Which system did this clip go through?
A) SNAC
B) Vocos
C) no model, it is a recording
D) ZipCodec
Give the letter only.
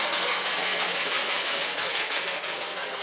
A